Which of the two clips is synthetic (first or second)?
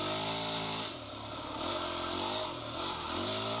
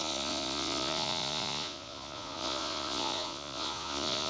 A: second